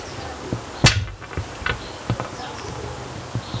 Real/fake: real